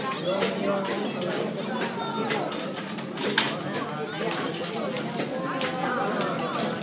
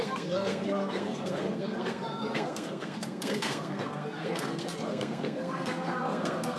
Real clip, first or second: first